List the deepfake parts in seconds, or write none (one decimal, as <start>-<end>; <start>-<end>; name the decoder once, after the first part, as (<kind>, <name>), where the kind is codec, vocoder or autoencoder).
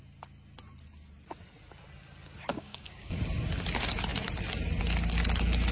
2.5-3.2 (codec, DAC)